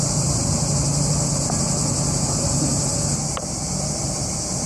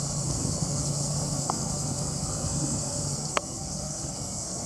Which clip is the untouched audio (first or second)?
first